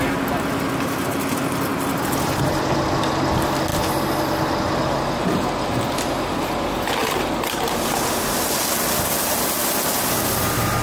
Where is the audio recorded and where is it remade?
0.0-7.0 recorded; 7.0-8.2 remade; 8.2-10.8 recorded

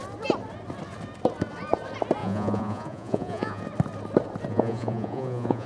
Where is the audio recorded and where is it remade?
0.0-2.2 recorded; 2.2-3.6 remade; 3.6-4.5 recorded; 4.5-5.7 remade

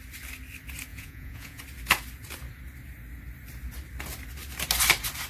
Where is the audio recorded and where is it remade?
0.0-0.9 recorded; 0.9-1.6 remade; 1.6-5.3 recorded

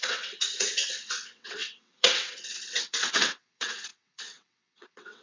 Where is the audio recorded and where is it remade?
0.0-5.2 remade